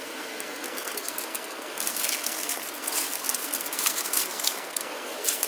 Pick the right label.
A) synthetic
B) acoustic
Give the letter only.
A